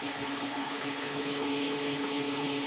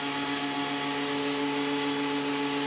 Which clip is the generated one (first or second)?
first